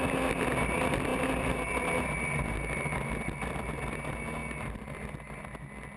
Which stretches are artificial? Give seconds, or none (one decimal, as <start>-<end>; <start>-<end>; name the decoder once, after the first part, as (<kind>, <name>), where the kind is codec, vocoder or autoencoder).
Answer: none